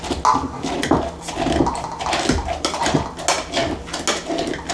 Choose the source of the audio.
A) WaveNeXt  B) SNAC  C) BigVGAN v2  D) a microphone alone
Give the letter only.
D